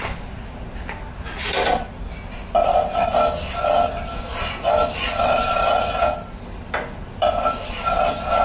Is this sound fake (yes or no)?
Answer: no